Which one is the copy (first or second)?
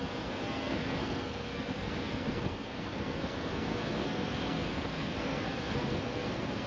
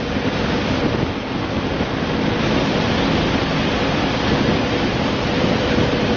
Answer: first